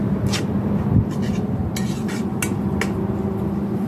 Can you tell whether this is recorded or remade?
recorded